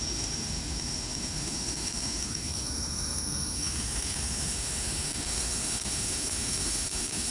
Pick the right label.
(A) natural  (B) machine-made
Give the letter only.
B